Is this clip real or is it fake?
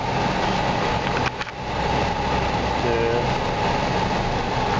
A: real